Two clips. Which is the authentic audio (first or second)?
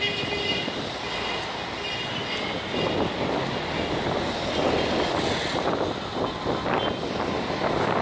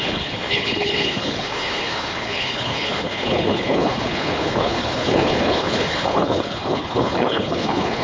first